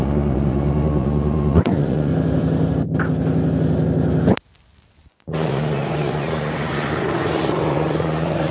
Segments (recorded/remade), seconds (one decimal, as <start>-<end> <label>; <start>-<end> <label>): 0.0-2.1 remade; 2.1-5.0 recorded; 5.0-8.5 remade